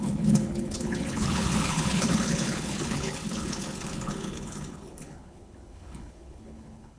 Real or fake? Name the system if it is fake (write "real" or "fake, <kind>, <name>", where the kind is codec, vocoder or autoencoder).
fake, codec, HILCodec